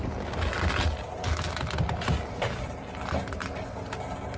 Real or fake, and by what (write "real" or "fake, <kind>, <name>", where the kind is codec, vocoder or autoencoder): real